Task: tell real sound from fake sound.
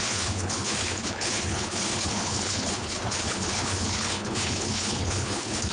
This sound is fake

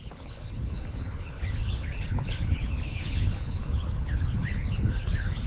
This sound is fake